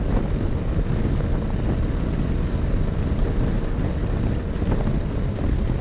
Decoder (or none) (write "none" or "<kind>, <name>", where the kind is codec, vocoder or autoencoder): none